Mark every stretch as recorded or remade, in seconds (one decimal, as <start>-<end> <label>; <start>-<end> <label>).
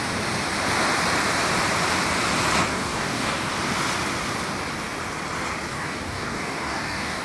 0.0-2.7 recorded; 2.7-3.5 remade; 3.5-5.7 recorded; 5.7-7.2 remade